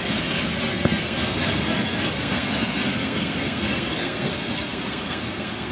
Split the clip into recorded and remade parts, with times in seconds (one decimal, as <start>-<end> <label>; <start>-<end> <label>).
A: 0.0-5.7 remade